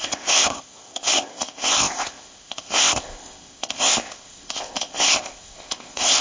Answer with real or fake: fake